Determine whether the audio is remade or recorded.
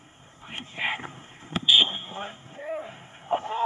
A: remade